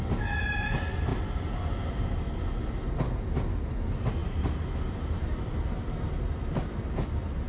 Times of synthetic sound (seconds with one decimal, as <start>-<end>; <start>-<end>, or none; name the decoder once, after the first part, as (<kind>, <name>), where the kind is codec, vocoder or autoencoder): 1.1-1.9 (vocoder, BigVGAN v2); 4.2-6.8